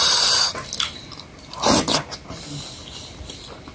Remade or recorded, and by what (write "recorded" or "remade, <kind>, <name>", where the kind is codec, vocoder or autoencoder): recorded